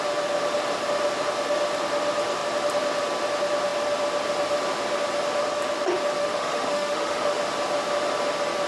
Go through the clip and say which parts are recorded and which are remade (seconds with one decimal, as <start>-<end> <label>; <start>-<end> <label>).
0.0-6.2 recorded; 6.2-7.4 remade; 7.4-8.7 recorded